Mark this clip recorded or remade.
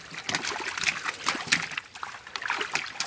recorded